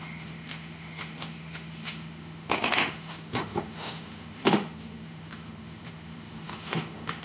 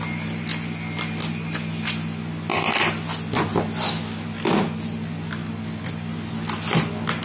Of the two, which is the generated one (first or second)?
first